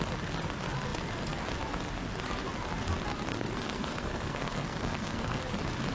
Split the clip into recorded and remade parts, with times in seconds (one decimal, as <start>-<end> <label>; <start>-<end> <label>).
0.0-3.3 recorded; 3.3-5.4 remade; 5.4-5.9 recorded

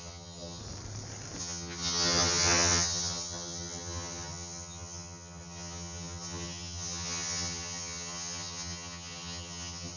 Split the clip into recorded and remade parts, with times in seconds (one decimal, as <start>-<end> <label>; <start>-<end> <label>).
0.0-0.6 remade; 0.6-1.4 recorded; 1.4-10.0 remade

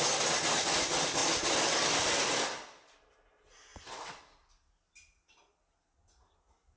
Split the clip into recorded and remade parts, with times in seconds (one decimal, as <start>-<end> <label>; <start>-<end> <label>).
0.0-6.8 recorded

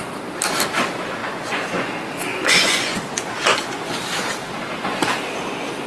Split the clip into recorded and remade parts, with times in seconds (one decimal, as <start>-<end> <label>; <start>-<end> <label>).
0.0-1.2 recorded; 1.2-1.9 remade; 1.9-2.3 recorded; 2.3-4.0 remade; 4.0-5.9 recorded

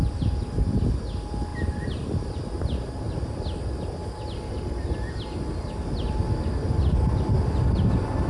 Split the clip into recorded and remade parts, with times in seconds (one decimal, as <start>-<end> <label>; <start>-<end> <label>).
0.0-8.3 recorded